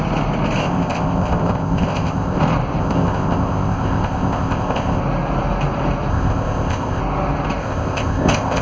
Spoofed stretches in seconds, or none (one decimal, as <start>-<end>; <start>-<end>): 0.6-2.4; 2.8-5.0; 6.1-7.0; 7.6-8.6